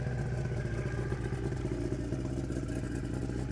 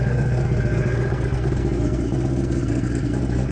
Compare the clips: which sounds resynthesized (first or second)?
second